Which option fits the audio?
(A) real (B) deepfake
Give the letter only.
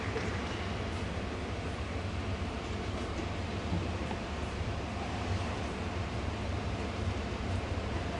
B